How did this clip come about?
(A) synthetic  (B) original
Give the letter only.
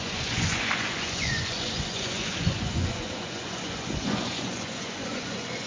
A